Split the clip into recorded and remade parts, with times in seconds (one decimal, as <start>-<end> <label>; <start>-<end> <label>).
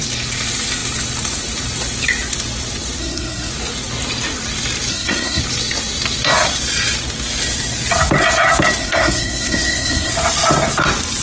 0.0-3.0 recorded; 3.0-3.5 remade; 3.5-4.9 recorded; 4.9-5.4 remade; 5.4-8.8 recorded; 8.8-10.1 remade; 10.1-11.2 recorded